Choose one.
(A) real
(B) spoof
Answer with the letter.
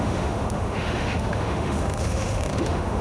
B